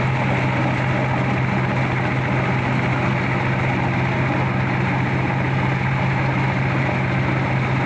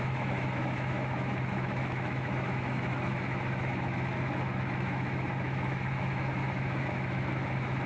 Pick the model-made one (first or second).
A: second